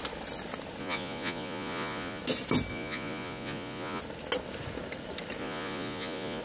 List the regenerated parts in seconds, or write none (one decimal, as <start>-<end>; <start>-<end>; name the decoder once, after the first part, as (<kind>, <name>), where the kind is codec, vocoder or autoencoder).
0.8-2.2 (vocoder, Vocos); 2.7-4.0; 5.4-6.4